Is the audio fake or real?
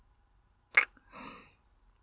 real